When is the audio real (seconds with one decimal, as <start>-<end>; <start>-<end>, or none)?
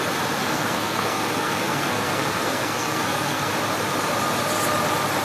0.0-0.4; 3.5-5.2